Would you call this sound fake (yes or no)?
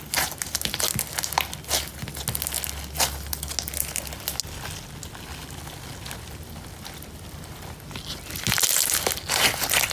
no